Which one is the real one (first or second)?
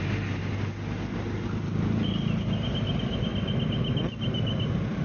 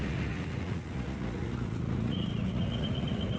first